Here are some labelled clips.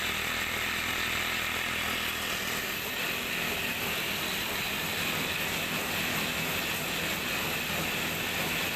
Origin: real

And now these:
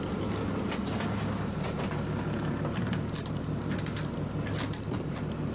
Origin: real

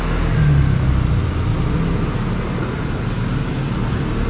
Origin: real